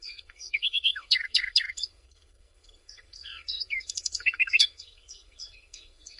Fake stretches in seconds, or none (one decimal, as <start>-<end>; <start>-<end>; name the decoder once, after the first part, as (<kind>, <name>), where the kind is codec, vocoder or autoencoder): 0.0-6.2 (codec, SNAC)